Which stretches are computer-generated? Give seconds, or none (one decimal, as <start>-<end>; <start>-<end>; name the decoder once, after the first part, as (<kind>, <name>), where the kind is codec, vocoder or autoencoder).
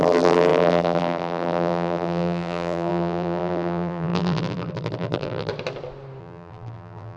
0.0-5.5 (vocoder, BigVGAN v2); 6.2-7.2